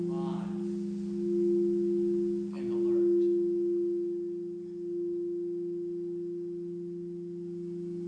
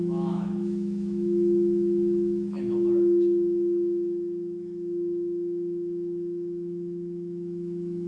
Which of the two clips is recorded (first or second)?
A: first